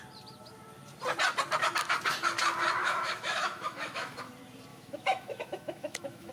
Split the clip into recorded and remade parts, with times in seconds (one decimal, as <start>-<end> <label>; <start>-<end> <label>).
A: 0.0-2.8 recorded; 2.8-4.3 remade; 4.3-4.7 recorded; 4.7-6.3 remade